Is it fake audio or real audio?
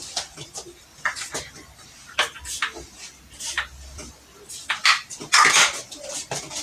real